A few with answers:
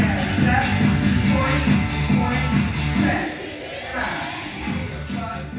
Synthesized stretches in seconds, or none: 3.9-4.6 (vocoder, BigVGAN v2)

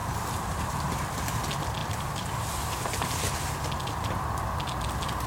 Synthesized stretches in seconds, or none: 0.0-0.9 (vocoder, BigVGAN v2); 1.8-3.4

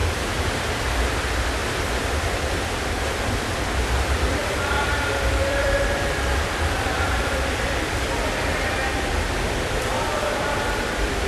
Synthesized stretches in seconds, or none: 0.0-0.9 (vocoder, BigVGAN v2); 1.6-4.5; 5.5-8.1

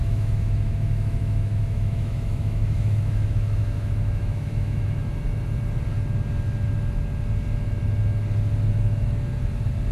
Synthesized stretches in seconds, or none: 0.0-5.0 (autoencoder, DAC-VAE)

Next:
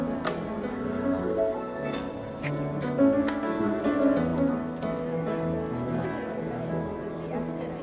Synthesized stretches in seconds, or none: 0.7-2.1 (codec, SNAC); 3.2-3.8

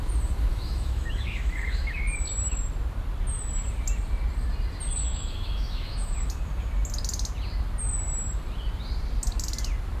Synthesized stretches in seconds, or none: 0.5-2.0 (autoencoder, DAC-VAE); 5.0-6.3